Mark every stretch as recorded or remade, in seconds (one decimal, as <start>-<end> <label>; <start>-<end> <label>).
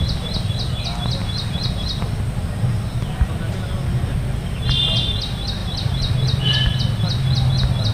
0.0-7.9 recorded